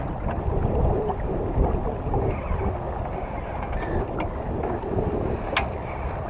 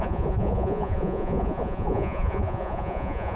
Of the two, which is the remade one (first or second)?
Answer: second